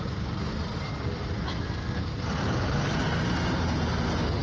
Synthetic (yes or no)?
no